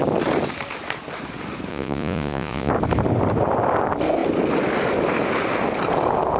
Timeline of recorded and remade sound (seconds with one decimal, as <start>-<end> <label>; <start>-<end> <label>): 0.0-1.7 recorded; 1.7-2.7 remade; 2.7-6.4 recorded